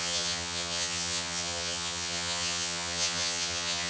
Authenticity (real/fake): fake